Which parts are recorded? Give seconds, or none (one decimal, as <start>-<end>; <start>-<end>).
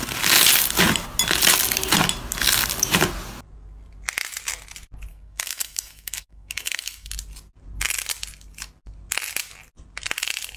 0.0-5.1; 7.1-10.6